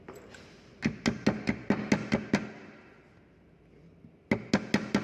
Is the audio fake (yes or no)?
no